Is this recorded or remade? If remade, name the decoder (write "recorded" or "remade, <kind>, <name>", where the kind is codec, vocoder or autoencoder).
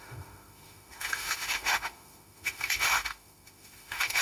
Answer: remade, autoencoder, DAC-VAE